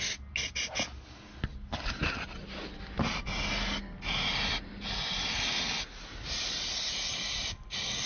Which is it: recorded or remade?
recorded